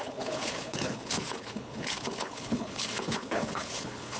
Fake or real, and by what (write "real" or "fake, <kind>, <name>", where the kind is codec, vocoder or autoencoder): fake, codec, HILCodec